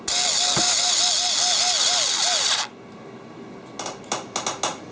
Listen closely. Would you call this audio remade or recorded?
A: recorded